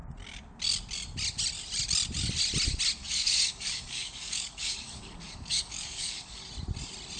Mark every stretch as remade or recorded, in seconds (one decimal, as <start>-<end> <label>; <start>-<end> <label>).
0.0-3.0 recorded; 3.0-6.5 remade; 6.5-7.2 recorded